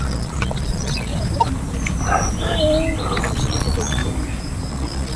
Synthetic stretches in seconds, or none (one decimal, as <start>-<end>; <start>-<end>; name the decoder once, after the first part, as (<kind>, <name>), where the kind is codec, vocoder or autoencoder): 0.0-1.1 (vocoder, Vocos); 3.2-4.0; 4.7-5.2